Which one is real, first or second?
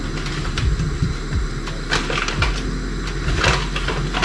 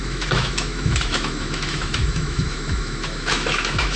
first